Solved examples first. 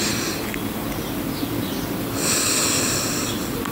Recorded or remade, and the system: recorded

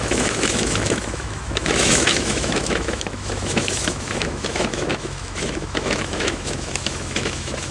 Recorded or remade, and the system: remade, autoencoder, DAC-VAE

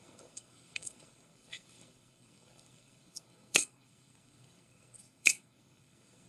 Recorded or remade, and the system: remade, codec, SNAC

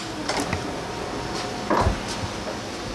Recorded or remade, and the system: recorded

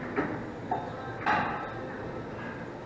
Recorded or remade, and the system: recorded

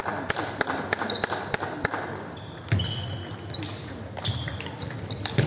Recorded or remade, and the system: remade, vocoder, BigVGAN v2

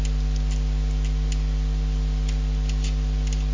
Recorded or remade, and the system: recorded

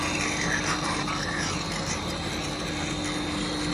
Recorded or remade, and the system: recorded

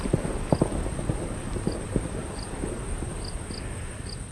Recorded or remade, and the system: recorded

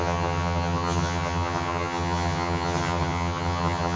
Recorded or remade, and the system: remade, vocoder, HiFi-GAN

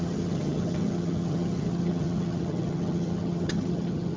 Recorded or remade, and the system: remade, vocoder, HiFi-GAN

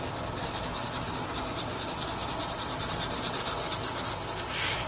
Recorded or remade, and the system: recorded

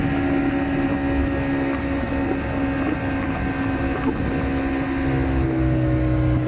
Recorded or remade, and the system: recorded